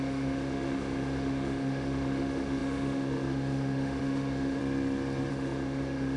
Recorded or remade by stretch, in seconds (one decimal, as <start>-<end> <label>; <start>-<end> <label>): 0.0-4.6 remade; 4.6-5.3 recorded; 5.3-6.2 remade